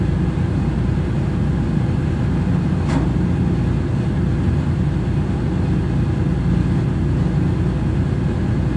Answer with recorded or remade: recorded